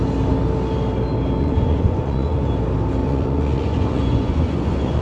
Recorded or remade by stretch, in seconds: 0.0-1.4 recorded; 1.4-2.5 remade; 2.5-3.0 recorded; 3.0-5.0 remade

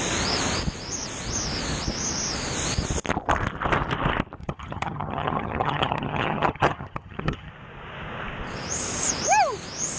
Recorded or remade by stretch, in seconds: 0.0-4.4 recorded; 4.4-7.5 remade; 7.5-10.0 recorded

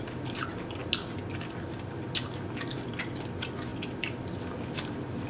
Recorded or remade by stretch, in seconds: 0.0-5.3 recorded

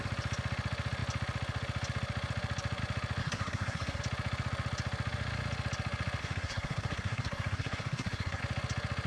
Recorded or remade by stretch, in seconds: 0.0-3.2 recorded; 3.2-4.0 remade; 4.0-6.2 recorded; 6.2-8.4 remade; 8.4-9.1 recorded

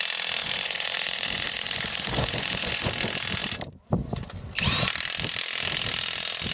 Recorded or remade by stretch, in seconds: 0.0-0.4 recorded; 0.4-2.9 remade; 2.9-6.5 recorded

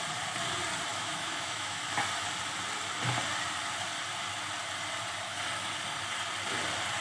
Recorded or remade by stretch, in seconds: 0.0-0.9 recorded; 0.9-1.8 remade; 1.8-7.0 recorded

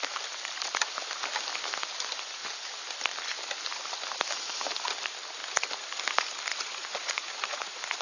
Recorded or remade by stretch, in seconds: 0.0-6.5 recorded; 6.5-8.0 remade

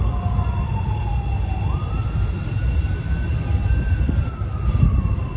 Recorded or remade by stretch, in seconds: 0.0-5.4 recorded